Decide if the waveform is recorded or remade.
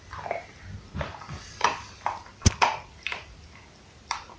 recorded